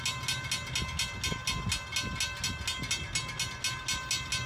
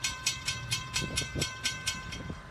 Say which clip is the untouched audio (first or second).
first